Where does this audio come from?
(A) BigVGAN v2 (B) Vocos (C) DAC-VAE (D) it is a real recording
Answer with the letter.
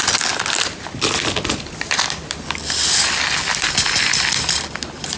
D